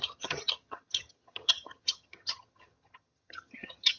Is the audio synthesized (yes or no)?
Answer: yes